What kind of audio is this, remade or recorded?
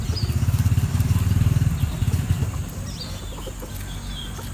recorded